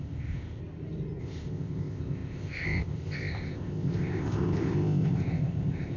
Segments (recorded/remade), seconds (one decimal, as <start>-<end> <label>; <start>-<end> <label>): 0.0-0.6 remade; 0.6-1.2 recorded; 1.2-6.0 remade